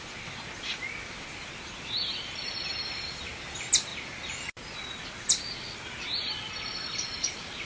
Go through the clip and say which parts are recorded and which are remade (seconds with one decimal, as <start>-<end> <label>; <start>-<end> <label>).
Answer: 0.0-7.7 recorded